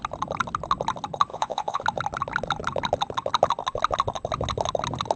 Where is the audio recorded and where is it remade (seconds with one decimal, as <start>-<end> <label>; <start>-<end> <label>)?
0.0-1.3 recorded; 1.3-1.8 remade; 1.8-5.2 recorded